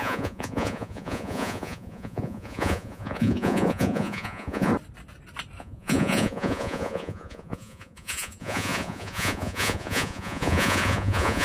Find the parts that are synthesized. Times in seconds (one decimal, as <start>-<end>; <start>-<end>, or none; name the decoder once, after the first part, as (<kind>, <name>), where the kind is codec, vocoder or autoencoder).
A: 0.0-4.7 (vocoder, Vocos); 5.6-11.4